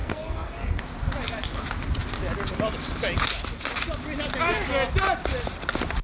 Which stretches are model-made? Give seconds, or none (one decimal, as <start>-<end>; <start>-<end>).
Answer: 0.0-0.8